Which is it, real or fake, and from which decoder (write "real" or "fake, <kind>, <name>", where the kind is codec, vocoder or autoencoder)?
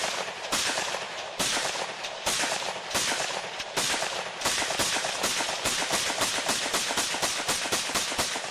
fake, vocoder, BigVGAN v2